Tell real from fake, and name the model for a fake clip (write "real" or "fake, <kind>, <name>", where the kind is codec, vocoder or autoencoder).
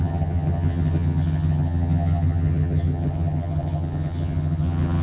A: fake, vocoder, HiFi-GAN